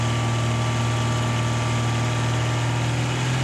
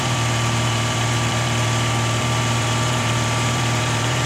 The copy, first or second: second